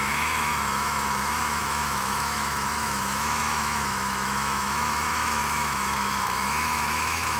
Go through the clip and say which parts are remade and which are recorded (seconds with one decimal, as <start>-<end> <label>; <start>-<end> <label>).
0.0-7.4 remade